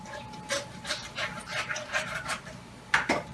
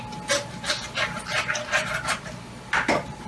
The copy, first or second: first